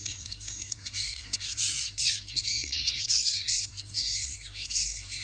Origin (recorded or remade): remade